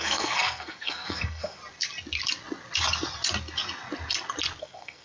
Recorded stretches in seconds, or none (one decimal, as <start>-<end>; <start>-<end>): 1.6-4.6